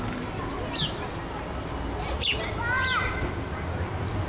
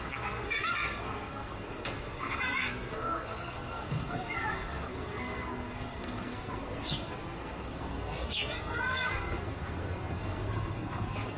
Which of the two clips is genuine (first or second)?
first